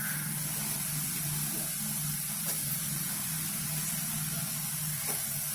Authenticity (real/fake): real